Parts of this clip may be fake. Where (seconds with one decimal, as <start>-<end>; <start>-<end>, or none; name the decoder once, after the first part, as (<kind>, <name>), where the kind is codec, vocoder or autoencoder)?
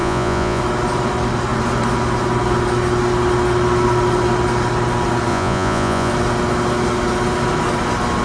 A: 0.0-0.6 (vocoder, Vocos); 5.3-6.1